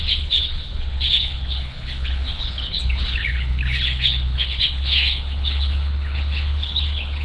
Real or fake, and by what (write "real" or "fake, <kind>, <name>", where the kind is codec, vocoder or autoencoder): fake, codec, HILCodec